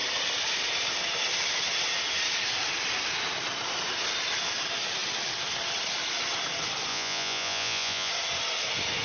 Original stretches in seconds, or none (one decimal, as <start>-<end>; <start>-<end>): 0.0-6.9; 8.1-9.0